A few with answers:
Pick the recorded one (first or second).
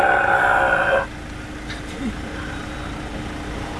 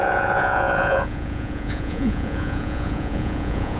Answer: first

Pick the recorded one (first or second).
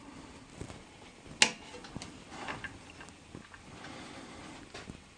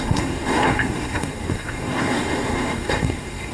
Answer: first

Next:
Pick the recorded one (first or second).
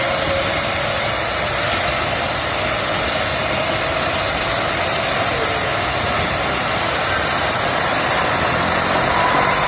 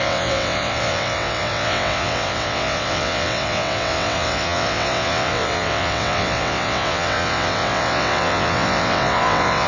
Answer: first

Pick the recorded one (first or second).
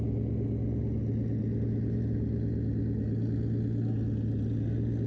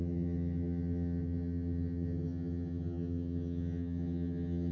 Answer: first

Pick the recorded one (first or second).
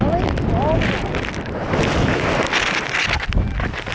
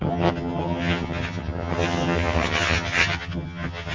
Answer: first